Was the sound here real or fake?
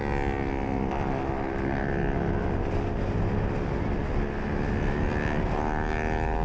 real